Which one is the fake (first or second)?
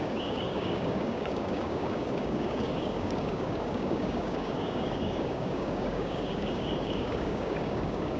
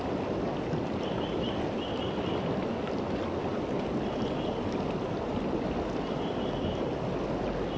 first